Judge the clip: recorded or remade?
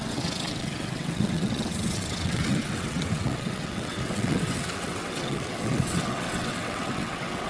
remade